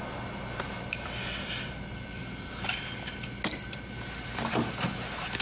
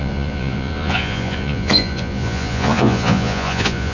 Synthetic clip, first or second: second